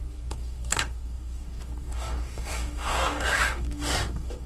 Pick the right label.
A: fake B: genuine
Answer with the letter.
A